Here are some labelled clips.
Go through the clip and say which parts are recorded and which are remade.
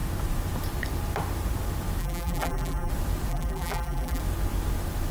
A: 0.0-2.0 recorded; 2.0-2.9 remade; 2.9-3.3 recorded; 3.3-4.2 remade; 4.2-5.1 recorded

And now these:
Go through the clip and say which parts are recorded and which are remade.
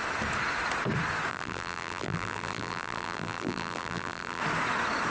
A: 0.0-1.3 recorded; 1.3-4.4 remade; 4.4-5.1 recorded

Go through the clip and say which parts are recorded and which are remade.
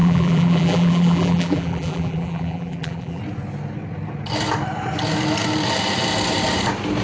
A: 0.0-3.2 remade; 3.2-7.0 recorded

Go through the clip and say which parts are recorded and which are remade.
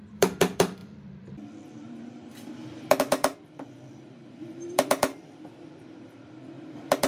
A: 0.0-7.1 remade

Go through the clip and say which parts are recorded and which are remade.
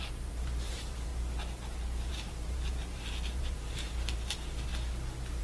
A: 0.0-1.1 remade; 1.1-2.1 recorded; 2.1-4.7 remade; 4.7-5.4 recorded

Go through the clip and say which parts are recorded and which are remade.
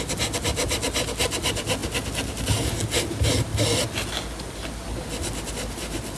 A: 0.0-6.2 recorded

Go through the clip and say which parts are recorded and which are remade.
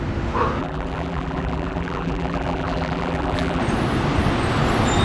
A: 0.0-0.6 recorded; 0.6-3.6 remade; 3.6-5.0 recorded